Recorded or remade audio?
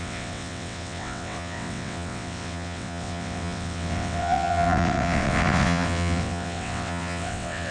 remade